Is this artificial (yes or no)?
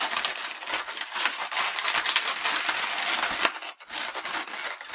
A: no